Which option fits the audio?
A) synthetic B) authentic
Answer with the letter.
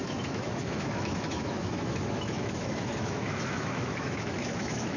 A